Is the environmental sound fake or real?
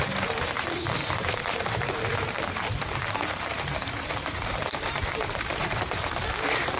fake